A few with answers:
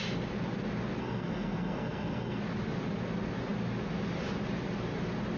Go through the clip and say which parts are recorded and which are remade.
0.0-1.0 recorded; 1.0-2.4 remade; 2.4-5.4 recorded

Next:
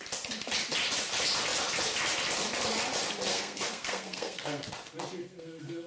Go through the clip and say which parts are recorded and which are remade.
0.0-3.3 recorded; 3.3-4.7 remade; 4.7-5.2 recorded; 5.2-5.9 remade

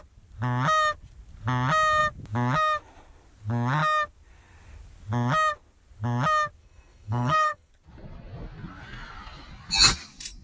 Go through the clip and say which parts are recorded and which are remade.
0.0-6.6 recorded; 6.6-7.7 remade; 7.7-10.4 recorded